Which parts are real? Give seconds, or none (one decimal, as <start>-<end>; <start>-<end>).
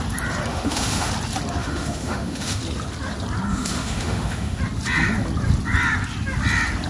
0.0-0.5; 1.1-1.6; 2.6-3.5; 4.6-6.9